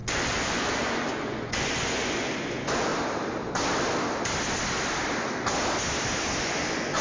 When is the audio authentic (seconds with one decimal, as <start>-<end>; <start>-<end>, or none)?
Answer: 2.9-6.4

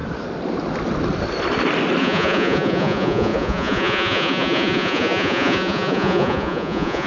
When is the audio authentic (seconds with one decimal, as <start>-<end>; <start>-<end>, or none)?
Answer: 0.0-2.0

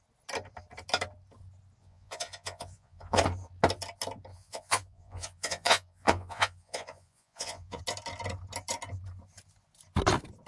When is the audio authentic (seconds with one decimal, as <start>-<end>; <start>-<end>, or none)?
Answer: 0.0-1.8; 3.2-4.3; 7.8-10.5

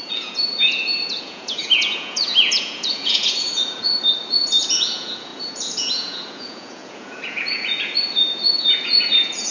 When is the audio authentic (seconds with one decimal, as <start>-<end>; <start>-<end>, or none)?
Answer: none

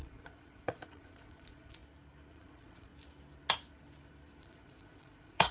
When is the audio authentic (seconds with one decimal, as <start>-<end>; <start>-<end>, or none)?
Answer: 1.8-2.3; 2.9-4.4

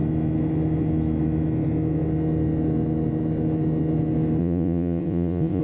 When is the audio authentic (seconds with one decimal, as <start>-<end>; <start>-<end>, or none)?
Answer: 0.0-4.4